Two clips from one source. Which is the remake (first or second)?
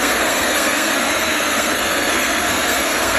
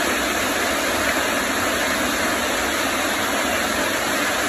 first